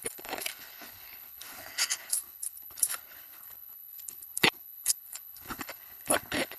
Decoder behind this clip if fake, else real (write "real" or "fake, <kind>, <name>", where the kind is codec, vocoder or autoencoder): fake, codec, HILCodec